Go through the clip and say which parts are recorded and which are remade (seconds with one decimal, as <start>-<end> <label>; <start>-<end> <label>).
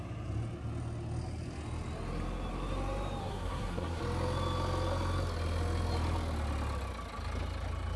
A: 0.0-3.2 recorded; 3.2-4.0 remade; 4.0-8.0 recorded